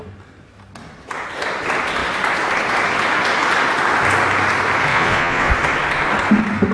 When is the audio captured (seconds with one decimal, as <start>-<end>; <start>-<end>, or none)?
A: 0.0-4.9; 5.5-6.7